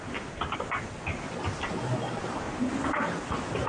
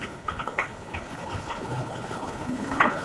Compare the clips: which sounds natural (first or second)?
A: first